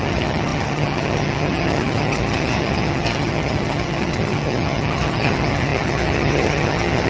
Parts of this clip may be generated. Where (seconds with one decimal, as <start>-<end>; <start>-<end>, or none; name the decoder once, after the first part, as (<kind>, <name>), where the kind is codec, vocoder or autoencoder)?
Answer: 0.0-7.1 (vocoder, HiFi-GAN)